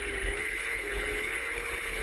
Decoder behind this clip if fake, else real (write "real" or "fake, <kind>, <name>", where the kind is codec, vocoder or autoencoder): fake, codec, HILCodec